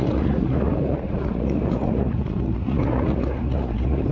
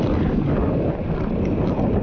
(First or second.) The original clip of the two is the second